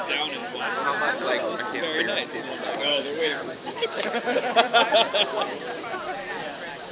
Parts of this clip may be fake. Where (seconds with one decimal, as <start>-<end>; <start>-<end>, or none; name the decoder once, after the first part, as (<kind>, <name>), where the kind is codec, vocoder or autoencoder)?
2.9-4.2 (codec, DAC)